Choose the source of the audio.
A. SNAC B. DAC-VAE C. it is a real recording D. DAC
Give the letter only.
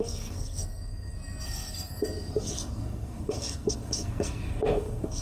A